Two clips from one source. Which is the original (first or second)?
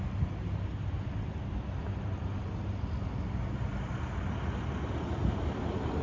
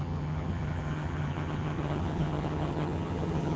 first